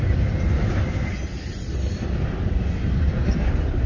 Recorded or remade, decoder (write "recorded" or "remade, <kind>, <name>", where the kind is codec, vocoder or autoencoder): recorded